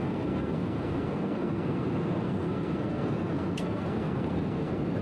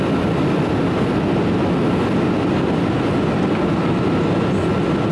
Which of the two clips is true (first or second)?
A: second